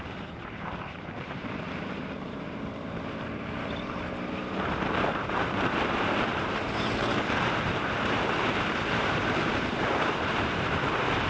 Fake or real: fake